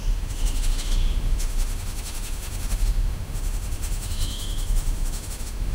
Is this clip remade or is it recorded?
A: remade